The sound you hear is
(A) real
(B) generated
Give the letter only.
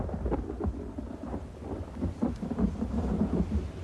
A